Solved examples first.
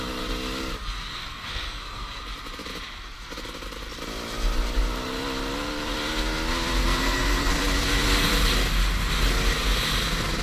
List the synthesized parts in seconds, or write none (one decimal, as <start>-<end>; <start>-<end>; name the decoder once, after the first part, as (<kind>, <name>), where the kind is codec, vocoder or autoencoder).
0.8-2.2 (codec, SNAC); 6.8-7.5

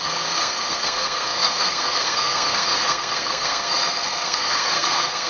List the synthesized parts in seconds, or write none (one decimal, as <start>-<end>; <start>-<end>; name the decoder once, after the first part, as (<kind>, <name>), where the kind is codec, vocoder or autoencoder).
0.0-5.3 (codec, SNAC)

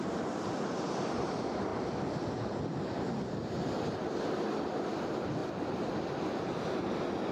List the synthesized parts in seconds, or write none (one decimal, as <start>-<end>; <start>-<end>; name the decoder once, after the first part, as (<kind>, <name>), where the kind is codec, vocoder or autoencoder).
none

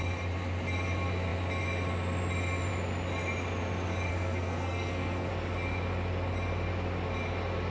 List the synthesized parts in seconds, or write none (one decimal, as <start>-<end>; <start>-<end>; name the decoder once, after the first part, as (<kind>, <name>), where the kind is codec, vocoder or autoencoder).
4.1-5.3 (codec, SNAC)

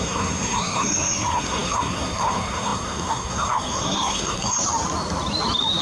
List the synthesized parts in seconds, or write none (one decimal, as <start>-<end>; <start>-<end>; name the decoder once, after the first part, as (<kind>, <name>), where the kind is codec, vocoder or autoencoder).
0.0-4.6 (codec, SNAC)

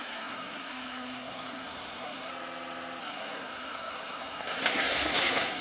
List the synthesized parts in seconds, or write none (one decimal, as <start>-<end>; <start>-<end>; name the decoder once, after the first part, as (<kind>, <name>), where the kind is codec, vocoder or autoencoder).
0.0-2.3 (codec, SNAC); 3.0-5.6

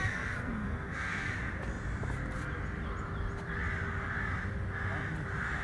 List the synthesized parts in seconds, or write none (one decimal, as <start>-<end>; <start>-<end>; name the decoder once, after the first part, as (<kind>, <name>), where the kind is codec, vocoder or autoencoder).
0.0-1.3 (codec, SNAC)